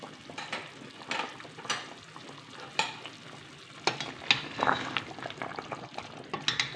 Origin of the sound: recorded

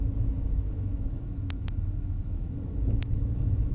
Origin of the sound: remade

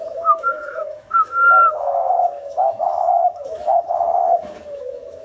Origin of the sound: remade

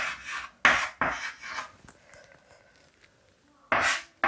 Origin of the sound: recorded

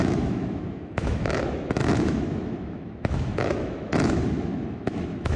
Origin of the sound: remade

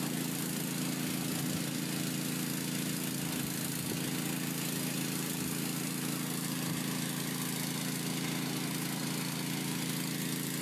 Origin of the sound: recorded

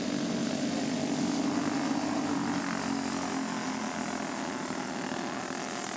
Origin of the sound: recorded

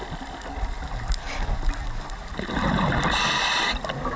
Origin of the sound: recorded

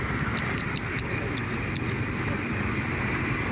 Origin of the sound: recorded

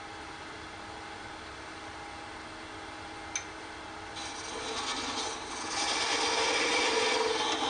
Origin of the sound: recorded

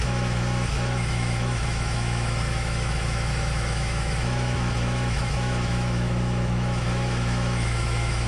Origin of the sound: remade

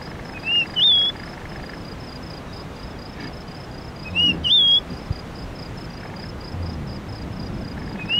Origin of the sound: recorded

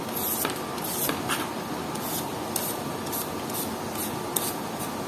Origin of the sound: recorded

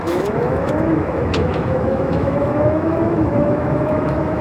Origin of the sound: remade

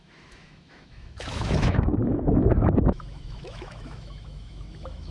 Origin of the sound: remade